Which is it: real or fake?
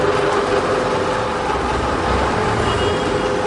real